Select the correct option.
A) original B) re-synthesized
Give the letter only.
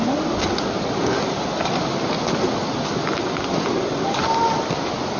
A